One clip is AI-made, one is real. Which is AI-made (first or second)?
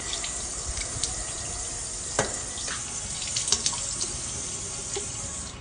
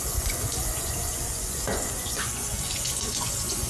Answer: second